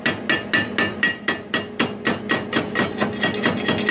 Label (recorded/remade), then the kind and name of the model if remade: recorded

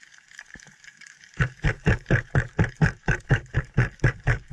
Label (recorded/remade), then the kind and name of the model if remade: remade, codec, DAC